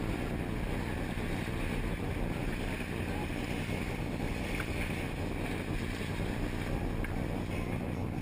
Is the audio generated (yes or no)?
no